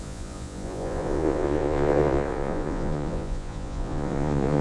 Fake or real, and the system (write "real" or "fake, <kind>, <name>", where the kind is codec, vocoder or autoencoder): fake, vocoder, Vocos